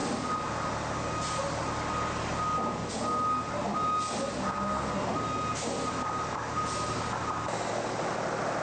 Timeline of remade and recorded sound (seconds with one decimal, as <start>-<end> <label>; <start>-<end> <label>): 0.0-8.6 recorded